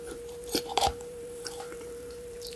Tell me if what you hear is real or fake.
fake